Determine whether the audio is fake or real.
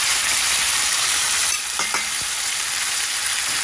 fake